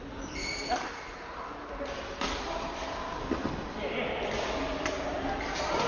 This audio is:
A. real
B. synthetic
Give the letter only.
A